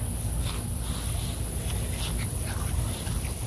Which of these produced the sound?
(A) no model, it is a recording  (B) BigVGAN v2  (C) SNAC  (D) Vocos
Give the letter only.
A